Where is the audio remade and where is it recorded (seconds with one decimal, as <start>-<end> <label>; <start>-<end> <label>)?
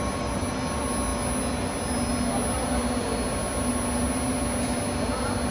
0.0-5.5 recorded